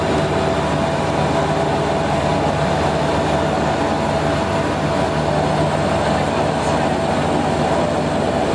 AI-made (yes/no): no